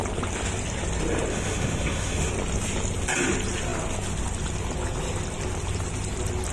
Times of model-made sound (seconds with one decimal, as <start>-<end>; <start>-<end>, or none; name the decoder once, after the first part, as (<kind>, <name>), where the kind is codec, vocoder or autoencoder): 1.3-2.3 (autoencoder, DAC-VAE)